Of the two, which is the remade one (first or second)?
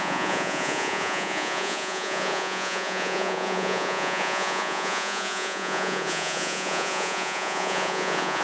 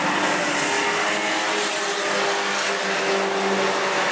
first